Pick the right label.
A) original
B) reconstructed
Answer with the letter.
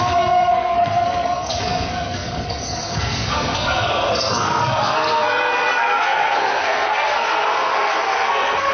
B